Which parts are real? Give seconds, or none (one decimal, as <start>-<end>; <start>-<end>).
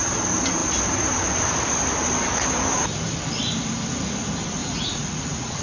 0.0-4.6